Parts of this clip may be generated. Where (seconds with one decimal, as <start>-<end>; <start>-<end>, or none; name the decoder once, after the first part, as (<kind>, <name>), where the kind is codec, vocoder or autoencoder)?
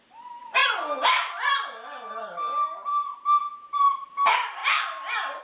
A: none